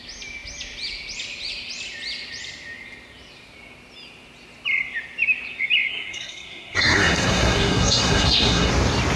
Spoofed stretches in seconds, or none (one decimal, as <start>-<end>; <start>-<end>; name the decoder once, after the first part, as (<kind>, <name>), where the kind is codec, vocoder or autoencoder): 5.9-8.7 (codec, SNAC)